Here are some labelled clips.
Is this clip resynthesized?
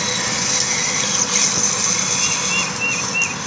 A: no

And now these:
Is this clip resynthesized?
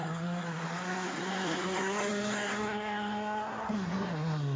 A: yes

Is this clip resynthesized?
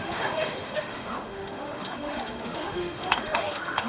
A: yes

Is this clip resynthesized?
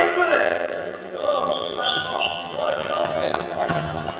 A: yes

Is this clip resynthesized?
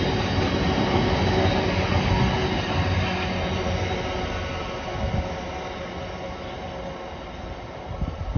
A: no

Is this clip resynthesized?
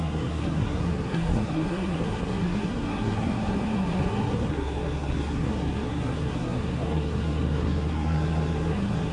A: yes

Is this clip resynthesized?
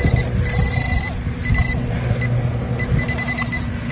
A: no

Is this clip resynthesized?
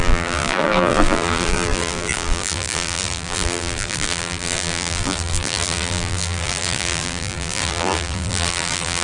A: yes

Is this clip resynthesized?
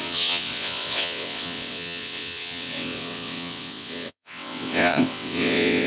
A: yes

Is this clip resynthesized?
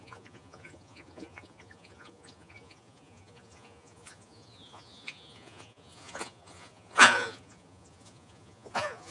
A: yes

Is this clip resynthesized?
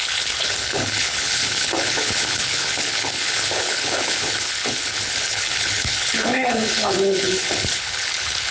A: yes